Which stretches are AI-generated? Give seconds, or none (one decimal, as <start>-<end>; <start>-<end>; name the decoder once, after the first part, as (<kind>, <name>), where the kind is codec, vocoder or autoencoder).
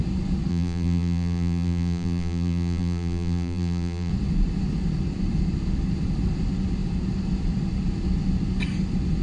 0.5-4.1 (vocoder, BigVGAN v2)